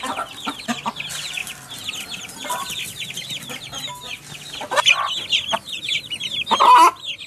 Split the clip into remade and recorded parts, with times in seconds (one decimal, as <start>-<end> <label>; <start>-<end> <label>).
0.0-7.3 recorded